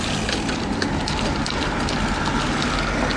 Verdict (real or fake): real